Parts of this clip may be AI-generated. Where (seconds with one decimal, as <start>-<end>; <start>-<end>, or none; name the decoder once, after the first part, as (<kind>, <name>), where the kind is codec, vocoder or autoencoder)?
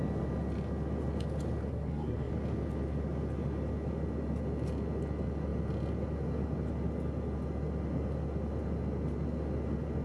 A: 1.7-2.3 (codec, SNAC)